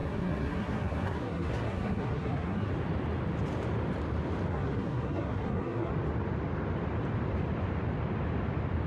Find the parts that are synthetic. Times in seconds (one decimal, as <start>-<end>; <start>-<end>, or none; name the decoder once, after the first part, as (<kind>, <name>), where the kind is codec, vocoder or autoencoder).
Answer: 0.0-2.7 (codec, SNAC); 4.5-5.9